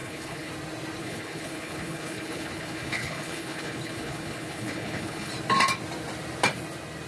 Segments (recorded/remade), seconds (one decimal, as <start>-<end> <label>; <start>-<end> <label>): 0.0-0.5 remade; 0.5-1.0 recorded; 1.0-5.3 remade; 5.3-7.1 recorded

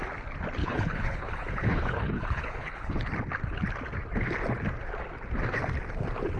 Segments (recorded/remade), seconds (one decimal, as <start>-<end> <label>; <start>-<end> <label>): 0.0-0.6 recorded; 0.6-3.0 remade; 3.0-6.4 recorded